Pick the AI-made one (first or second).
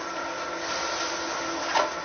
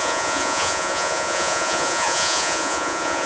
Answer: second